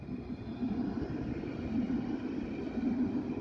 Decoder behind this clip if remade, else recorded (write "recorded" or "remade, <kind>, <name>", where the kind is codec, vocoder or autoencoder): recorded